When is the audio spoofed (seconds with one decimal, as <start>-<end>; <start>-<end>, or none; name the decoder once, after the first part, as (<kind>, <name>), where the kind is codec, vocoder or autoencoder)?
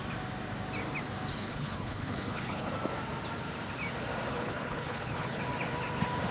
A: 1.3-2.7 (codec, HILCodec); 4.3-5.4